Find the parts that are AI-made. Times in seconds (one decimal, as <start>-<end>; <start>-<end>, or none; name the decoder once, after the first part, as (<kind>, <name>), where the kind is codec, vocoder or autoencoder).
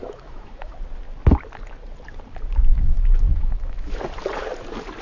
0.0-0.7 (autoencoder, DAC-VAE); 2.7-4.0